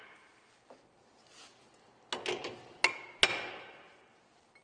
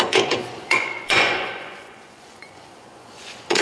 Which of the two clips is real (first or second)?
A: first